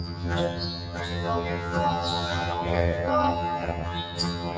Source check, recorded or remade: remade